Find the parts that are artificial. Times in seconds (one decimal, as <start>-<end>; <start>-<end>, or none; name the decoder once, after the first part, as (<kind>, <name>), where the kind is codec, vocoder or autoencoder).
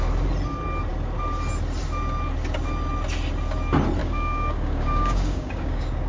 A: 4.0-6.1 (codec, DAC)